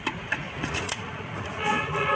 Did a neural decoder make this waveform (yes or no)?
yes